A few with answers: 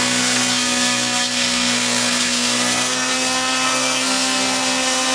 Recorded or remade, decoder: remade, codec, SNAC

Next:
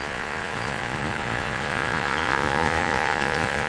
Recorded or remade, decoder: remade, vocoder, Vocos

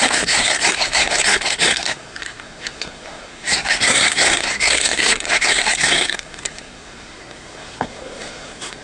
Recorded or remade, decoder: remade, codec, SNAC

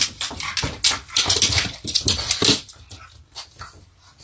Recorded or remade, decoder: recorded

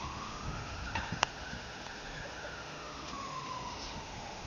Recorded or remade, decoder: remade, autoencoder, DAC-VAE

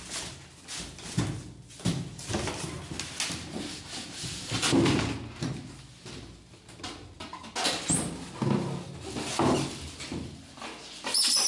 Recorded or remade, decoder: recorded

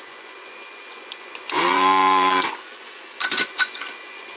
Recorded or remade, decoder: remade, vocoder, Vocos